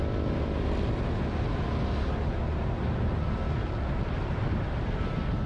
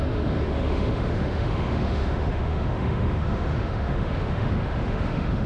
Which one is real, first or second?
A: first